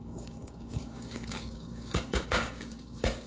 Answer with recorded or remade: remade